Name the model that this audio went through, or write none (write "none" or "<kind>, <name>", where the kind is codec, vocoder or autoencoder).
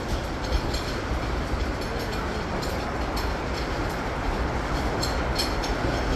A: none